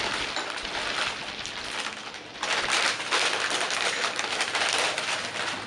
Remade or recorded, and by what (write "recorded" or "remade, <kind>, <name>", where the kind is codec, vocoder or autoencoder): remade, vocoder, BigVGAN v2